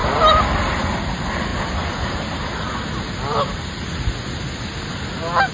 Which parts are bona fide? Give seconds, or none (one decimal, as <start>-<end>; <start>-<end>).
0.0-5.5